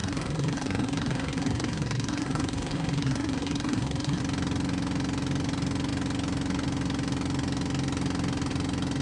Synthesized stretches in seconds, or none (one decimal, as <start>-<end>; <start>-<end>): 0.0-4.2